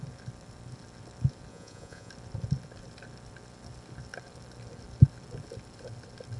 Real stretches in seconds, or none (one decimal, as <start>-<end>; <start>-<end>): 0.0-1.5; 2.1-6.4